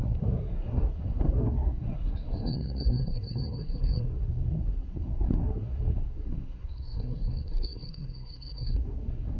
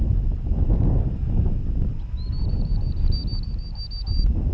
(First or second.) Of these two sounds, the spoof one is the first